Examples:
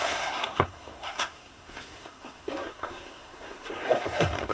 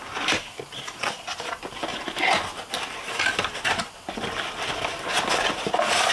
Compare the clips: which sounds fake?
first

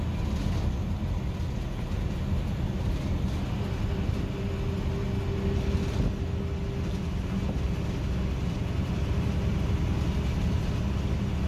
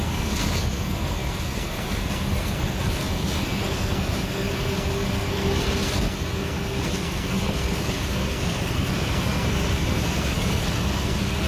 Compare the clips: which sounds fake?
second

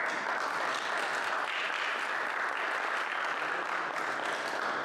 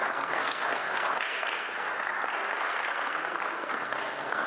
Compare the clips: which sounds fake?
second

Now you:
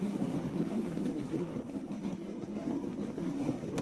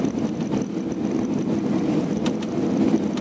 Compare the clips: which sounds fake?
first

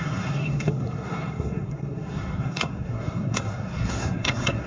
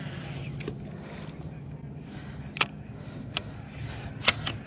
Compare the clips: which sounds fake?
first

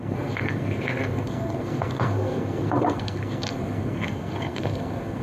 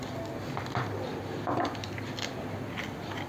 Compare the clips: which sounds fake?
first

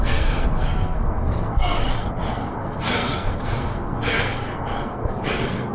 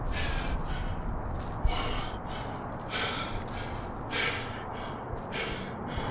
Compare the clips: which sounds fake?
first